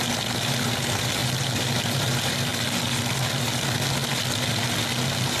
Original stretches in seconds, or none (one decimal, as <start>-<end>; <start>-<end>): 0.0-5.4